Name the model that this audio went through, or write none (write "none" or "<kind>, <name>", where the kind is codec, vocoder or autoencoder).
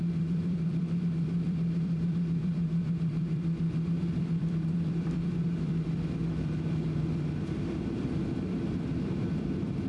vocoder, BigVGAN v2